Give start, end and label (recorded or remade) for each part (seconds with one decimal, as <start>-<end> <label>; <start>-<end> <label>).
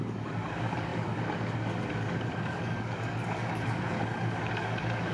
0.0-5.1 remade